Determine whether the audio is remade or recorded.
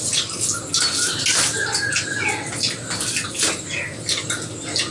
recorded